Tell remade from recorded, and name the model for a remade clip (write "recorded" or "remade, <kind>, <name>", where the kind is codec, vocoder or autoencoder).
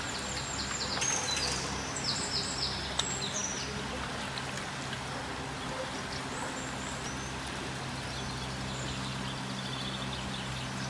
recorded